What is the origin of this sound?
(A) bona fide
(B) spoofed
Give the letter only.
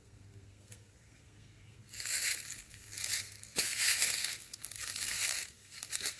B